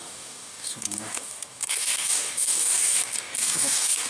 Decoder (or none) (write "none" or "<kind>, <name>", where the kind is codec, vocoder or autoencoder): codec, DAC